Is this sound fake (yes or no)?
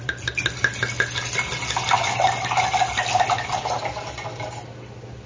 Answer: no